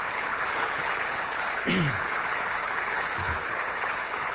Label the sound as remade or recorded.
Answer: remade